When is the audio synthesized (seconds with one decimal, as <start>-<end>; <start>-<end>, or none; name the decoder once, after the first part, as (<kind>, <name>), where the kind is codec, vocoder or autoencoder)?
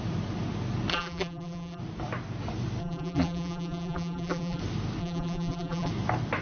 0.9-1.8 (vocoder, BigVGAN v2); 2.8-4.6; 5.0-5.9